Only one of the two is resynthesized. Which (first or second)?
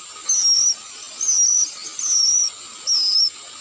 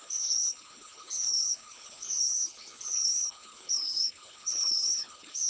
second